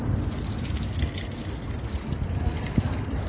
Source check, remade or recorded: recorded